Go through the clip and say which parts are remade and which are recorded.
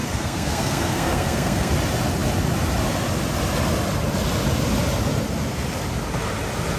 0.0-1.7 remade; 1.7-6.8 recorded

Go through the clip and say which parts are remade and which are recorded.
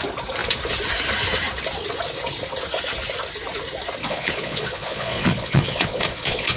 0.0-4.0 recorded; 4.0-6.6 remade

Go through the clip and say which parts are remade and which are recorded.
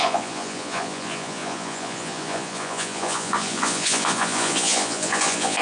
0.0-5.6 remade